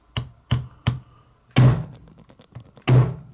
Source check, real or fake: real